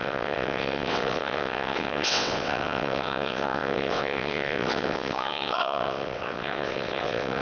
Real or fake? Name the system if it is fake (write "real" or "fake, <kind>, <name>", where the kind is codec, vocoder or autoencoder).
fake, vocoder, WaveNeXt